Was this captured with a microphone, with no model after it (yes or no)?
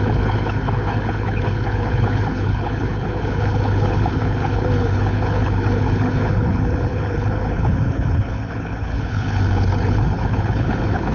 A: no